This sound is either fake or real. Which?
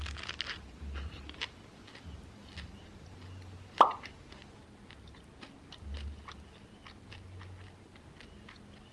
real